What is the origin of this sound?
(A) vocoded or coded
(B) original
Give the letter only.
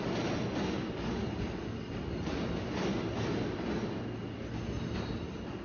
B